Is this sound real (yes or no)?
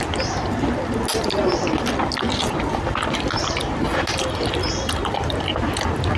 yes